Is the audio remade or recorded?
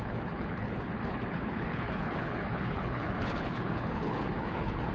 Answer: remade